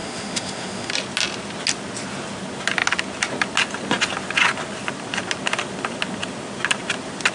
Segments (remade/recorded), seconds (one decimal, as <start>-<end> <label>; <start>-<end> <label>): 0.0-0.9 remade; 0.9-7.3 recorded